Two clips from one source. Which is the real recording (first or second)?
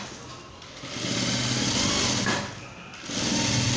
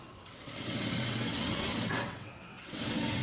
first